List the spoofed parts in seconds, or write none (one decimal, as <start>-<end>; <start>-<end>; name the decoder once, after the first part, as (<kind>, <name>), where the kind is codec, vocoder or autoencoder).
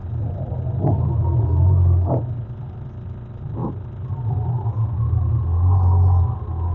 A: none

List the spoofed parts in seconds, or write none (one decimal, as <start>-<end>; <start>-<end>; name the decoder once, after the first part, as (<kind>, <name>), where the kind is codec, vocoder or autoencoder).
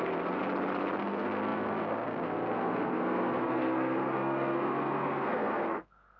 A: 0.0-0.4 (codec, SNAC); 1.0-6.2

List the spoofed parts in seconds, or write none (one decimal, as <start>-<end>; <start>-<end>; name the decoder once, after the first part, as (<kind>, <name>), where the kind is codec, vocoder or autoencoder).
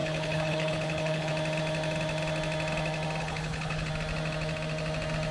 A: 0.0-1.3 (codec, HILCodec); 3.2-3.9